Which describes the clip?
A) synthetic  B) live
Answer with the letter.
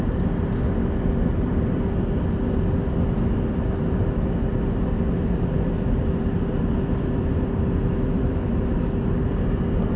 B